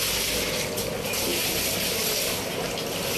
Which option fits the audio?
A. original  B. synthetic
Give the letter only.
A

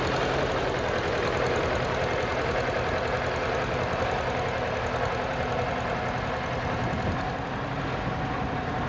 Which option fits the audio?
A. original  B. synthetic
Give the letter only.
A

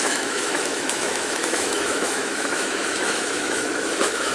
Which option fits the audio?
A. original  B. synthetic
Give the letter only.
B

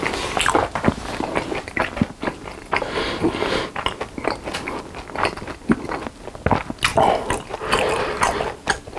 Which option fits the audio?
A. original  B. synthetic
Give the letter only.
A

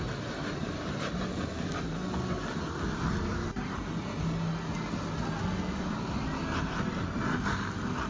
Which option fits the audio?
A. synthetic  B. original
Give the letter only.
B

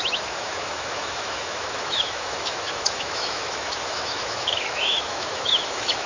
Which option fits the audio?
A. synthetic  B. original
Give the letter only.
A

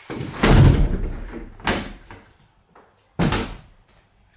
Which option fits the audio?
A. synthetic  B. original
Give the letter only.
B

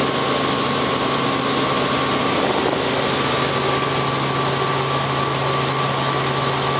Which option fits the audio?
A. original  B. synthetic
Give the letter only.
A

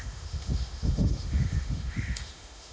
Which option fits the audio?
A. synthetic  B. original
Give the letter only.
A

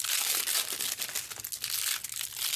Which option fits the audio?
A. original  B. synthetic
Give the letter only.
A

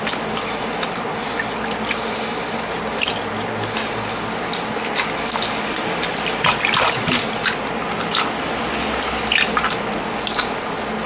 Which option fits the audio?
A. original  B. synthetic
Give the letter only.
A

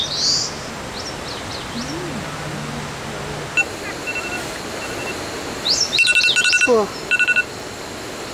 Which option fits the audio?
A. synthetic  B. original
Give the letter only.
B